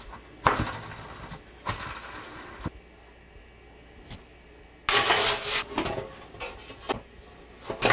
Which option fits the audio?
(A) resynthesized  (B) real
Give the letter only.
B